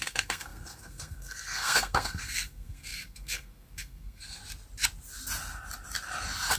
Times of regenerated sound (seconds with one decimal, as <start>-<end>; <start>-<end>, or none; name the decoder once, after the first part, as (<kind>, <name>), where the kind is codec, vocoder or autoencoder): 0.0-4.4 (codec, SNAC)